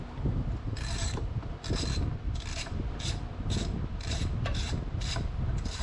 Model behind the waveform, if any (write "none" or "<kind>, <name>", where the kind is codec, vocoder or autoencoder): vocoder, BigVGAN v2